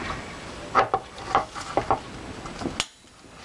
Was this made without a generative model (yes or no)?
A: yes